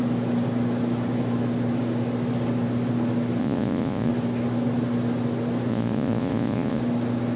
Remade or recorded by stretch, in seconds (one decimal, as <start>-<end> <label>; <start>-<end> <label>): 0.0-3.4 recorded; 3.4-4.1 remade; 4.1-5.7 recorded; 5.7-6.8 remade; 6.8-7.4 recorded